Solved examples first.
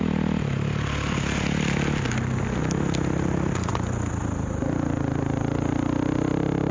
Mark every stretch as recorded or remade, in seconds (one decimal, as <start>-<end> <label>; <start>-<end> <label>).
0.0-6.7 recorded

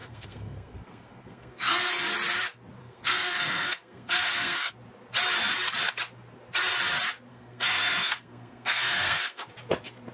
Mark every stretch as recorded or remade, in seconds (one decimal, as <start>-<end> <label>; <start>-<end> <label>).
0.0-1.9 remade; 1.9-2.8 recorded; 2.8-4.7 remade; 4.7-7.3 recorded; 7.3-9.5 remade; 9.5-10.1 recorded

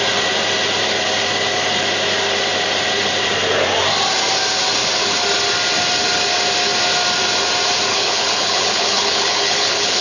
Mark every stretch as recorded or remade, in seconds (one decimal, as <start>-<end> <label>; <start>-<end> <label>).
0.0-7.9 recorded; 7.9-10.0 remade

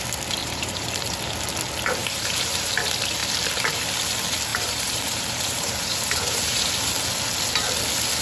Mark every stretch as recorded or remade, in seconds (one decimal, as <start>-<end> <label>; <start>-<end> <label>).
0.0-0.4 recorded; 0.4-0.9 remade; 0.9-2.0 recorded; 2.0-2.7 remade; 2.7-4.5 recorded; 4.5-6.7 remade; 6.7-8.2 recorded

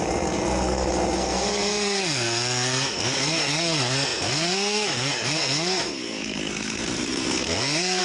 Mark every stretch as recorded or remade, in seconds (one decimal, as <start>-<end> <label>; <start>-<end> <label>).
0.0-8.0 remade

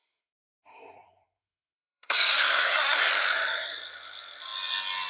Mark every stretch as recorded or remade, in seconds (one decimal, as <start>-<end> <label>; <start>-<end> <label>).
0.0-3.1 remade; 3.1-5.1 recorded

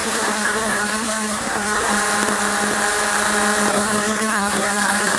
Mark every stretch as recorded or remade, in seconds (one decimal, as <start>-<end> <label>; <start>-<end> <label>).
0.0-1.9 remade; 1.9-3.7 recorded; 3.7-5.2 remade

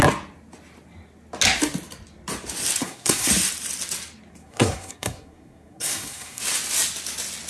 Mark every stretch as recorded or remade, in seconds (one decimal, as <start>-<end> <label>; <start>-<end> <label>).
0.0-2.8 recorded; 2.8-3.3 remade; 3.3-4.4 recorded; 4.4-6.4 remade; 6.4-7.5 recorded